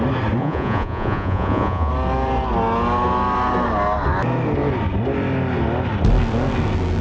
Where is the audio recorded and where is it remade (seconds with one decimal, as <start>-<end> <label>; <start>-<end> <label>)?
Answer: 0.0-0.4 recorded; 0.4-1.9 remade; 1.9-7.0 recorded